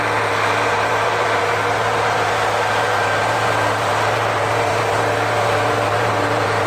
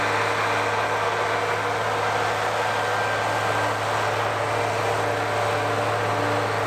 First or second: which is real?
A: second